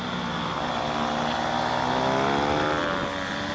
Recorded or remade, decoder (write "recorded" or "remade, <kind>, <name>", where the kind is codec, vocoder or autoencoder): recorded